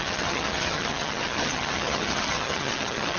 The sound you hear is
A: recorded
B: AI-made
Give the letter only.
B